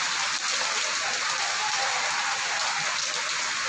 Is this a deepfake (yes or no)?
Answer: no